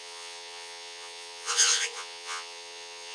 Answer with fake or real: fake